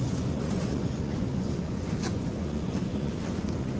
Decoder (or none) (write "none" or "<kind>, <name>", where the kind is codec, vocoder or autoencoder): vocoder, Vocos